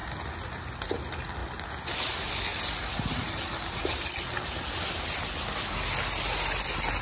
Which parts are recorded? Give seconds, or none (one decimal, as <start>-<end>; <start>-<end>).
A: 0.0-7.0